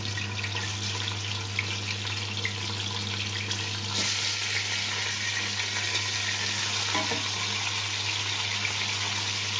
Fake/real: real